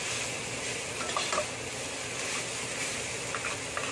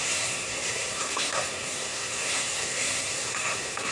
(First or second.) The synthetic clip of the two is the second